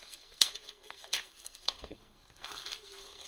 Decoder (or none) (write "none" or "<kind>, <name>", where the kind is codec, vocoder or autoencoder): codec, SNAC